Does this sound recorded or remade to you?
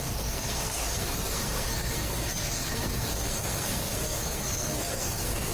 remade